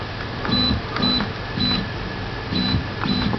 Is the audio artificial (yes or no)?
no